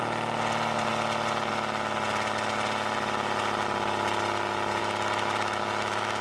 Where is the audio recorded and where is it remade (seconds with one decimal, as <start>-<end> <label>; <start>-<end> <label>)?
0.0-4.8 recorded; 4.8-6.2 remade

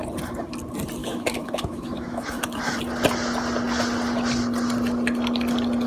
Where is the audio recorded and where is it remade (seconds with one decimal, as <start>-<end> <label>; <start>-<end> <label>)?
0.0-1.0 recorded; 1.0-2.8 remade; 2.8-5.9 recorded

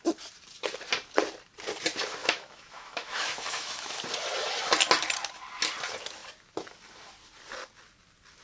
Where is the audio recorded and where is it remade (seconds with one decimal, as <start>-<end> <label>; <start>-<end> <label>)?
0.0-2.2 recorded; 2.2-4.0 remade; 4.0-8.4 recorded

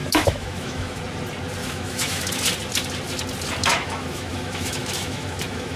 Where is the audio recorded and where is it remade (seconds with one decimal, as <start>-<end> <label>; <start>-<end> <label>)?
0.0-1.0 remade; 1.0-1.6 recorded; 1.6-2.4 remade; 2.4-3.6 recorded; 3.6-5.8 remade

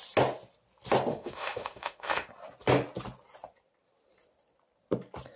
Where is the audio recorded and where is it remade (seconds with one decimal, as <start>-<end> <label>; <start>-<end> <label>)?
0.0-1.1 recorded; 1.1-2.3 remade; 2.3-5.4 recorded

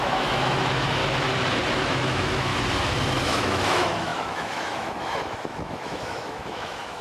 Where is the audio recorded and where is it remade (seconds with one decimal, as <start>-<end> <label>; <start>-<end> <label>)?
0.0-1.0 remade; 1.0-1.8 recorded; 1.8-2.5 remade; 2.5-3.2 recorded; 3.2-7.0 remade